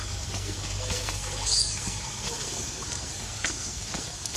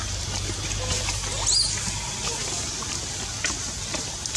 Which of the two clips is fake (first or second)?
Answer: first